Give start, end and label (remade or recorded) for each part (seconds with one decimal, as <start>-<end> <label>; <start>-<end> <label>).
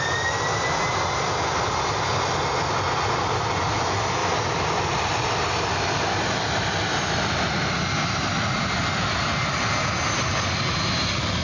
0.0-11.4 recorded